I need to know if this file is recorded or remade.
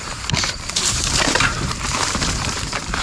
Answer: remade